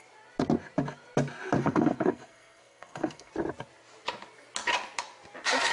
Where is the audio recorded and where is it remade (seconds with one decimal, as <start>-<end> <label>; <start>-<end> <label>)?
0.0-1.6 recorded; 1.6-3.3 remade; 3.3-5.7 recorded